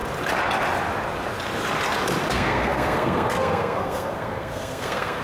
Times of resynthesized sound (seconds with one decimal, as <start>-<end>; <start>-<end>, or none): 2.3-5.2